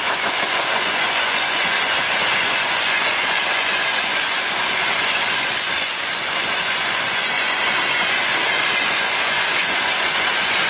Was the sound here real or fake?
fake